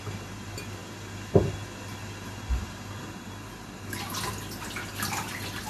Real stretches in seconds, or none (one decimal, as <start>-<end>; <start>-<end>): 0.0-5.7